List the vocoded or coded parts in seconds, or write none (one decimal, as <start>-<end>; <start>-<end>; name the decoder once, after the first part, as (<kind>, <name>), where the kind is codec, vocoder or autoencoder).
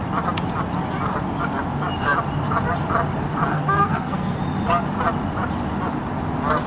3.5-4.4 (codec, SNAC)